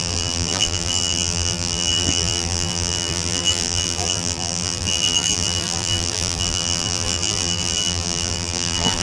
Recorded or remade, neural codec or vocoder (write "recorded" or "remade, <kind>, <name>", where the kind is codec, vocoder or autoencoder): remade, vocoder, BigVGAN v2